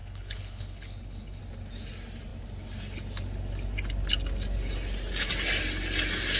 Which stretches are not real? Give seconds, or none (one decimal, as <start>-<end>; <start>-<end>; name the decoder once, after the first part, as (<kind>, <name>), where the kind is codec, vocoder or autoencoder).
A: 0.0-1.4 (codec, HILCodec)